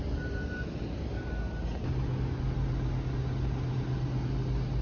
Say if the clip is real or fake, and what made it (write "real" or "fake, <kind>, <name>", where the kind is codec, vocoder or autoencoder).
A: real